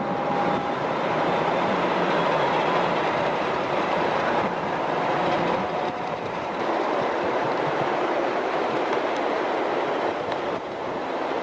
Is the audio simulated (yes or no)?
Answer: yes